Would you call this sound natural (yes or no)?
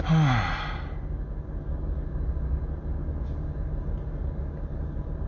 yes